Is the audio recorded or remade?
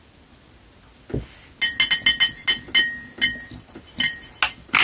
recorded